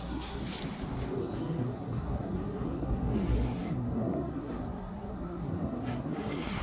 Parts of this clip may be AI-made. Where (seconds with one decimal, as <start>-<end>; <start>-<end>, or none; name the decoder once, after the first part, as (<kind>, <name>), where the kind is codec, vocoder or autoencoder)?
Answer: 0.0-0.6 (codec, SNAC); 1.2-6.6